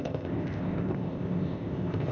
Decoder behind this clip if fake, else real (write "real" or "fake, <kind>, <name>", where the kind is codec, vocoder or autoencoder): fake, codec, ZipCodec